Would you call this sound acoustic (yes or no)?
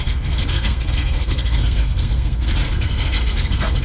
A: no